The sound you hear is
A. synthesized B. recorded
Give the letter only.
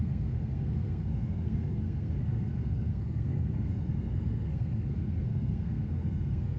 A